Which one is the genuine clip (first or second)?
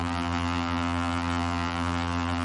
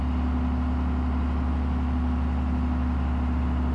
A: second